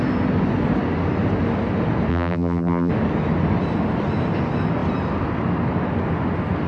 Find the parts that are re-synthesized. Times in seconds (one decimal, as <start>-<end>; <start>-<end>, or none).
2.1-2.9